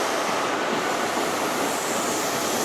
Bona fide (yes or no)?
yes